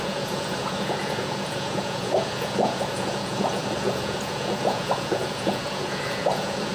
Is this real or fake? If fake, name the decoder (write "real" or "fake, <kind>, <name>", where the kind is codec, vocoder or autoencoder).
fake, vocoder, Vocos